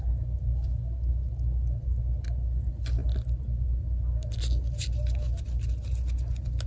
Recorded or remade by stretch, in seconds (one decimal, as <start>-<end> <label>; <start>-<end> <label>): 0.0-6.7 recorded